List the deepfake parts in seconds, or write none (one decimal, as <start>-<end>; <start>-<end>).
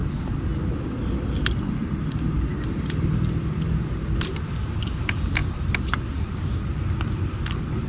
none